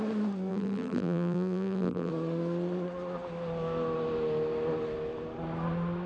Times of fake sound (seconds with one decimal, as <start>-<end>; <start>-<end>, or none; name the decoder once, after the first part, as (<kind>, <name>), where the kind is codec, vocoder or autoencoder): 0.5-2.1 (vocoder, BigVGAN v2)